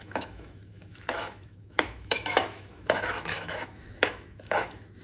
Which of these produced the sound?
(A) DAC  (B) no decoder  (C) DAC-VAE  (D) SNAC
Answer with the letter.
C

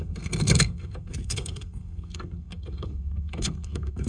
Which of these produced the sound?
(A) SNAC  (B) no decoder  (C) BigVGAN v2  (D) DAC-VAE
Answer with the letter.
A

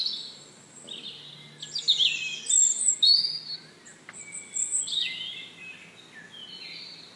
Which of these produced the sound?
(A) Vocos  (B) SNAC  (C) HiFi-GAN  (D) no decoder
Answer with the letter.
D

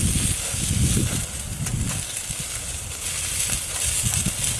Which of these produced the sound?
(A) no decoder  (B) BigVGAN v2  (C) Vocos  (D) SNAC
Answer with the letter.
A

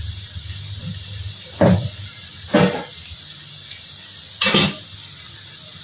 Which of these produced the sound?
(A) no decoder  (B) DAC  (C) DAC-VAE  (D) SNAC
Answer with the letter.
A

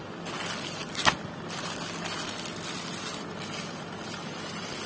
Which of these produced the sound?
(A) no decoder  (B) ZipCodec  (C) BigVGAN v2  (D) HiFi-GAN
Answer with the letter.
A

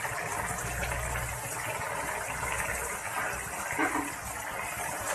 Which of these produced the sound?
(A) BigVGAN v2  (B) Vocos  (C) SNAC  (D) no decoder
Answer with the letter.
D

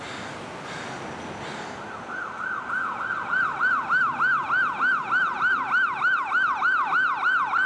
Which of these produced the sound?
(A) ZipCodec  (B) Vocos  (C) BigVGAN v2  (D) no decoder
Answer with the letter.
D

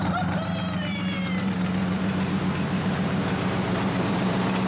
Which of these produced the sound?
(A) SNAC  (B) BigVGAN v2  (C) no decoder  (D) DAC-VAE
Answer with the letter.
B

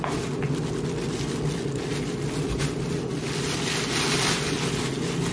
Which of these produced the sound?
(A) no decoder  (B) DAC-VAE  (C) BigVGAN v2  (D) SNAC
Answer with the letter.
A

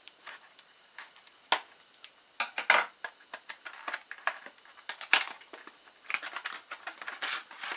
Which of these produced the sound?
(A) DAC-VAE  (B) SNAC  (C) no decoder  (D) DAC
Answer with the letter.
C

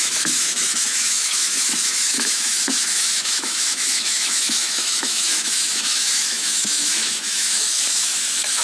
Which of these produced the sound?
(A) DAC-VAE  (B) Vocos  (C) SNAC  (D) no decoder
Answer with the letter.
A